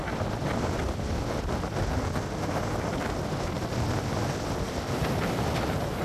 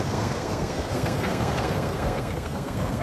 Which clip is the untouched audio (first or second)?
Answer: first